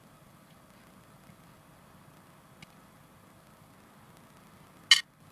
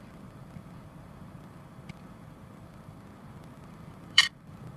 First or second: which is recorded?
first